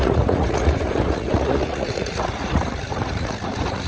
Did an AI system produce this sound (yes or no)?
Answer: yes